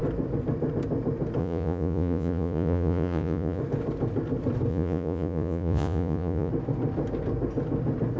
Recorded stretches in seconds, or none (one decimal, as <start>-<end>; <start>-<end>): 0.0-1.4; 3.6-4.7; 6.5-8.2